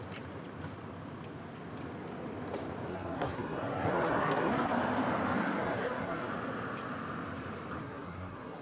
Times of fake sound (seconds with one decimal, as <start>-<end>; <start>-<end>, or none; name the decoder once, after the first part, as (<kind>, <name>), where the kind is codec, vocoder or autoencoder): 2.9-4.7 (codec, SNAC); 5.4-6.3; 7.8-8.6